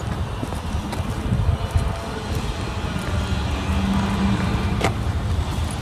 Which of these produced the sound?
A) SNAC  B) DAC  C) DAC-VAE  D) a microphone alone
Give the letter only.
D